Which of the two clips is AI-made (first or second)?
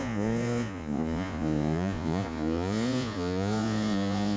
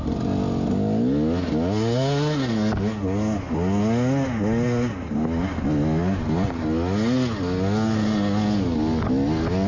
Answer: first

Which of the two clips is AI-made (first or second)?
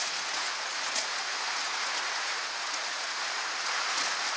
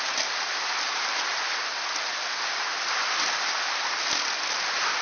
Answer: first